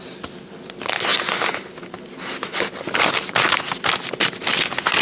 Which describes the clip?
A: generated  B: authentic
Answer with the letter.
B